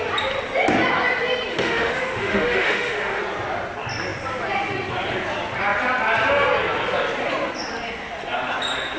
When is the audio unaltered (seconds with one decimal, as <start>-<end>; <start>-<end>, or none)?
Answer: 0.0-1.5; 3.2-9.0